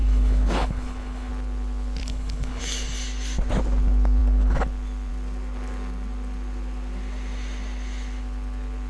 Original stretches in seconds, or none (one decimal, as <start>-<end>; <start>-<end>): 1.3-2.0; 2.6-8.9